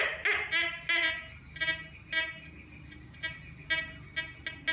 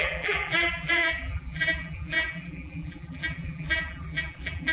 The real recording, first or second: first